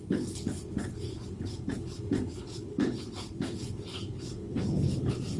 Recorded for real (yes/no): no